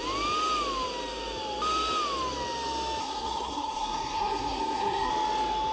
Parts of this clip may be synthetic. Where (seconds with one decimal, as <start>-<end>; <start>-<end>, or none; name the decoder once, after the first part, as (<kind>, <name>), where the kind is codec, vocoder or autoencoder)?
3.0-5.1 (codec, SNAC)

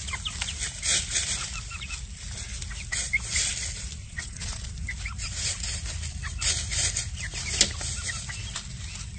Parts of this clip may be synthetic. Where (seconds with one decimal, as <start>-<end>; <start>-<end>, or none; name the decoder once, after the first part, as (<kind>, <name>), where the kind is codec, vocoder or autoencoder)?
4.0-4.7 (vocoder, Vocos)